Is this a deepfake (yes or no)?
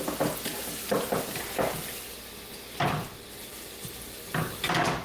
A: no